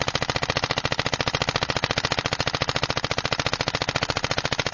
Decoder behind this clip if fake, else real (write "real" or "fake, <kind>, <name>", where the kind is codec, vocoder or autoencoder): real